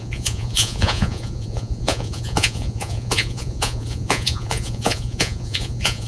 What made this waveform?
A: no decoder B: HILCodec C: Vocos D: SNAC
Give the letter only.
C